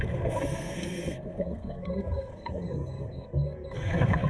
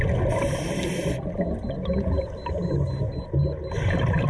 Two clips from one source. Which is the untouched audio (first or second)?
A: second